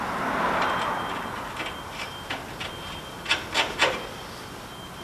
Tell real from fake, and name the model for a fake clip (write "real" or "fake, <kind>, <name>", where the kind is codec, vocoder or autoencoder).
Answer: real